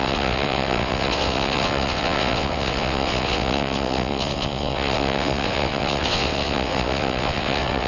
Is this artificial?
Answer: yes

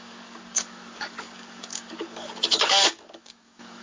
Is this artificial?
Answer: yes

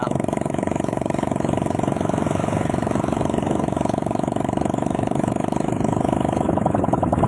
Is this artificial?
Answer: yes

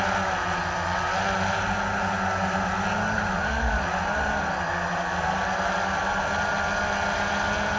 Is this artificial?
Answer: no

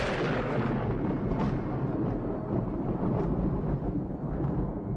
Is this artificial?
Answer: no